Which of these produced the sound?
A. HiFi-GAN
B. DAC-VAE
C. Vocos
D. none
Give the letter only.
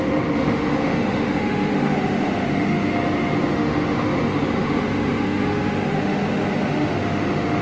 B